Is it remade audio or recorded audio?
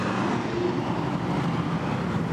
recorded